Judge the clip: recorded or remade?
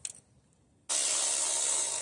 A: recorded